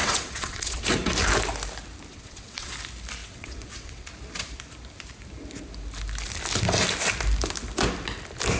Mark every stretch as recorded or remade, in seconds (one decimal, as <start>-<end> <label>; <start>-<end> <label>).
0.0-0.8 remade; 0.8-2.1 recorded; 2.1-2.7 remade; 2.7-3.2 recorded; 3.2-4.1 remade; 4.1-8.6 recorded